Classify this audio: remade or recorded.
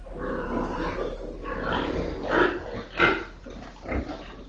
recorded